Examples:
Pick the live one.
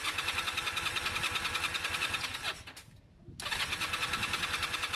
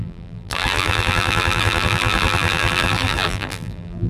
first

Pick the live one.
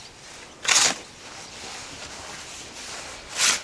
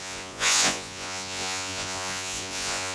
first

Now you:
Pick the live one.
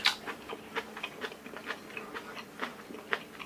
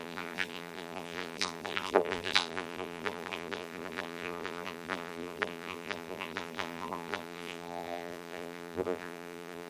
first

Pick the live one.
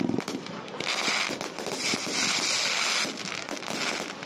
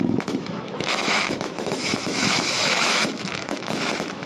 first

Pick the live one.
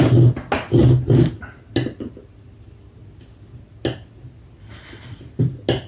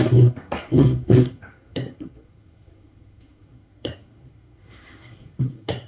first